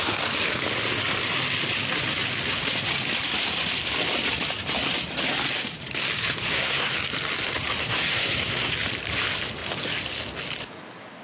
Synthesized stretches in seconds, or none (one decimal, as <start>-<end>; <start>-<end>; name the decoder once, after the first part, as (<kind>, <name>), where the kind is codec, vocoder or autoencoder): 6.4-6.9 (codec, SNAC); 7.8-8.7